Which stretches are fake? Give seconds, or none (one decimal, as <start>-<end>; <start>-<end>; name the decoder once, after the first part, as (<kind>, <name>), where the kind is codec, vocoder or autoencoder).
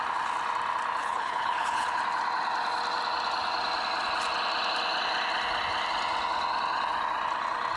1.0-2.0 (codec, HILCodec)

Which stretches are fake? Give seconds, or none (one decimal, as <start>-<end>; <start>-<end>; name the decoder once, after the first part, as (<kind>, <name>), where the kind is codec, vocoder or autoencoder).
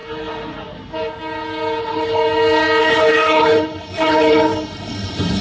1.8-2.2 (codec, HILCodec); 2.8-5.4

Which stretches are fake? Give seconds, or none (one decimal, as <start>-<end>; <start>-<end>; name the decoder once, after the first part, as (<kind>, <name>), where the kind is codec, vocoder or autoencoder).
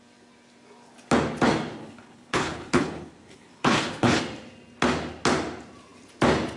1.8-4.2 (codec, HILCodec)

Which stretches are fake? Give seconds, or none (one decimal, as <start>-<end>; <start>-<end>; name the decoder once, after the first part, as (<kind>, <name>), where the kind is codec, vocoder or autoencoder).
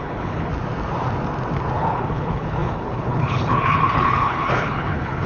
0.0-0.5 (codec, HILCodec); 1.8-5.3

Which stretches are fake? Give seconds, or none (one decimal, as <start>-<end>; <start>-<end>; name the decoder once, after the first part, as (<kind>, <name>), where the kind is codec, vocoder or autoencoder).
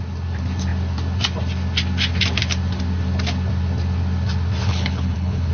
4.6-5.5 (codec, HILCodec)